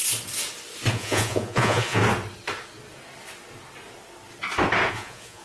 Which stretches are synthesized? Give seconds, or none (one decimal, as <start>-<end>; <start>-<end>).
0.9-2.0; 4.9-5.4